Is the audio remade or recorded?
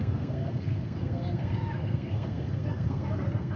remade